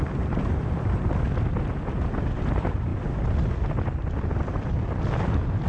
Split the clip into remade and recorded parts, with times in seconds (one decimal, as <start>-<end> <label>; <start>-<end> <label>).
0.0-5.7 recorded